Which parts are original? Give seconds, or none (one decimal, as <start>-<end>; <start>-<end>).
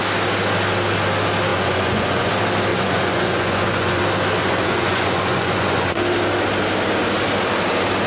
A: 0.0-1.5; 2.3-2.7; 4.0-4.4; 6.0-8.1